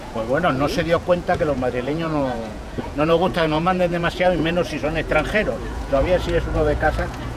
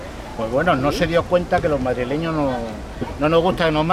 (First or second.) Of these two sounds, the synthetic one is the first